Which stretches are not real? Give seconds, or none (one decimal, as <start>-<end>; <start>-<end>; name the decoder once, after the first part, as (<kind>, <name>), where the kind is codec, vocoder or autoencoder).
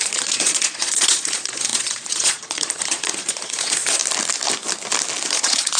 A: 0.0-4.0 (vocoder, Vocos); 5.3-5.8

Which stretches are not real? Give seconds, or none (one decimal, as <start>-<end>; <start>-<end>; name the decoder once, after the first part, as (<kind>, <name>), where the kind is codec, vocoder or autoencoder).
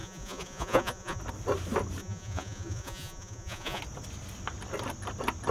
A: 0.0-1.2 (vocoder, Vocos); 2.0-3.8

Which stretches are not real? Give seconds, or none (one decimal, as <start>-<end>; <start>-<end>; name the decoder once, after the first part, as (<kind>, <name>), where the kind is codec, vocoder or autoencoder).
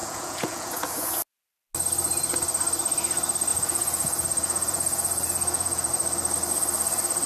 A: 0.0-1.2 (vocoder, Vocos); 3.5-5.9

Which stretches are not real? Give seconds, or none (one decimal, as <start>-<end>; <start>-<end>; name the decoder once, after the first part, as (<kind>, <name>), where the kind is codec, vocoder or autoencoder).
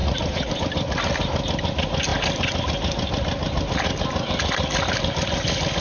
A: 0.0-0.5 (vocoder, Vocos)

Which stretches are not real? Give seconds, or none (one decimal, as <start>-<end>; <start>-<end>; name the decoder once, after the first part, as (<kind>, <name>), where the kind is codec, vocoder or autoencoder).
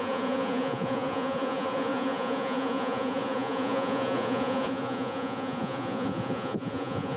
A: 0.0-7.2 (vocoder, Vocos)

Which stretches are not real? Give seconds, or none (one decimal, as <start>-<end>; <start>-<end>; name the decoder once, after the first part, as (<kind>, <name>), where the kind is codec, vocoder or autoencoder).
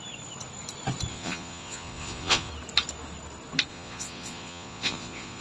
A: 1.1-2.5 (vocoder, Vocos); 3.7-5.4